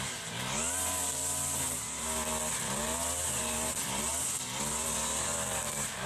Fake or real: real